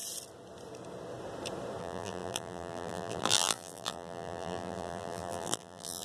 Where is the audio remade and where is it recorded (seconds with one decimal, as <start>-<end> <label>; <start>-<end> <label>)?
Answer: 0.0-1.8 recorded; 1.8-6.0 remade